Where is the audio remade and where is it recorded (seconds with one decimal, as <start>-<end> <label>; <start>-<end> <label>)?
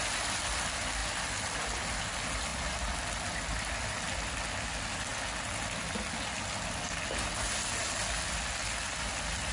0.0-9.5 recorded